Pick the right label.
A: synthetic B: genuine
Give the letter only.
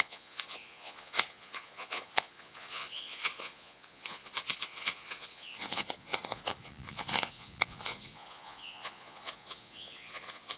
A